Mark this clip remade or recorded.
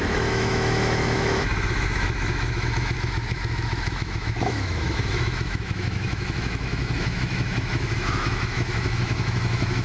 remade